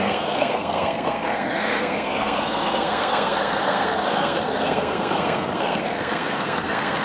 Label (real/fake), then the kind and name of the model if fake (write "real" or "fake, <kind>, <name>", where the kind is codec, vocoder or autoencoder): fake, codec, SNAC